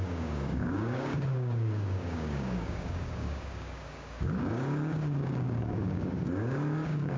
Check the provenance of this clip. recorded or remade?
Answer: remade